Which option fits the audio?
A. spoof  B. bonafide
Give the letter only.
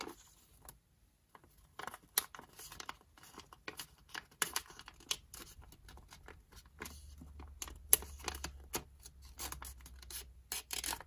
B